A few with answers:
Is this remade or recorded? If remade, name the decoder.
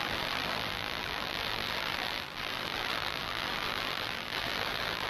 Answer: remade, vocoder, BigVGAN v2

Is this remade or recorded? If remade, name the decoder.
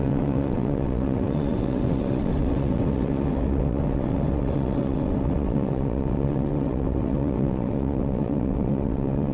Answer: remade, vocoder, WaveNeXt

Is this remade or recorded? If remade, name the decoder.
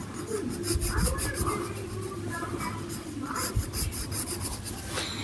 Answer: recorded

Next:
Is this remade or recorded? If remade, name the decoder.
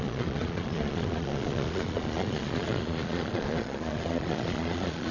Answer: remade, vocoder, Vocos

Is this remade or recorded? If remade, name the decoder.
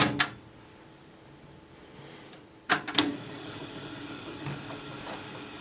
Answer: recorded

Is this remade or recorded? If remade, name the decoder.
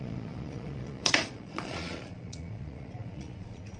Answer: remade, vocoder, Vocos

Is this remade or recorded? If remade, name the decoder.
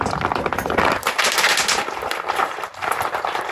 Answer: recorded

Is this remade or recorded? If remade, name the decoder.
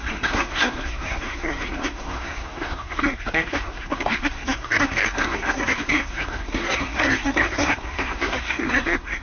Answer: remade, codec, SNAC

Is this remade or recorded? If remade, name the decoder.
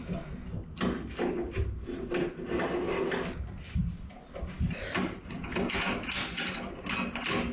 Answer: recorded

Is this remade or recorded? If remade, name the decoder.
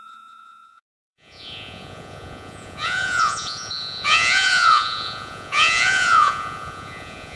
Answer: remade, vocoder, Vocos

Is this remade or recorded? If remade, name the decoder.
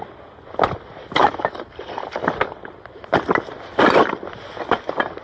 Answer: recorded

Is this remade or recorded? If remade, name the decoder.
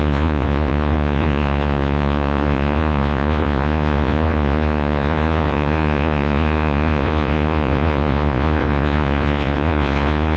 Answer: remade, vocoder, Vocos